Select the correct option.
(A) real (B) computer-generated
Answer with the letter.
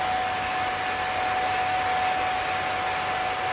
A